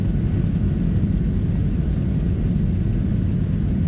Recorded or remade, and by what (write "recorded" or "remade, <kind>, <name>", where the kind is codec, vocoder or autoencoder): recorded